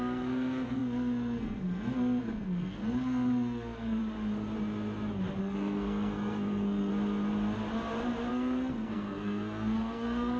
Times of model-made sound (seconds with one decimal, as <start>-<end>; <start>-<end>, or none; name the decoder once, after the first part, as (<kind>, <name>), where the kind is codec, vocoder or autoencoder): 0.0-4.0 (codec, SNAC); 5.4-6.9; 8.3-10.4